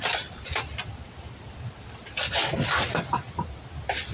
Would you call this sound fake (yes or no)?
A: no